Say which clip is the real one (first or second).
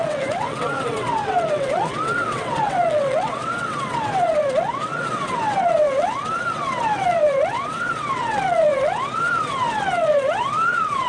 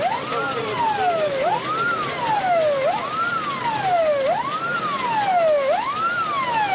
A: second